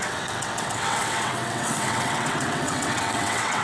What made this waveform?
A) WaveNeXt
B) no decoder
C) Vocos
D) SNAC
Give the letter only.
A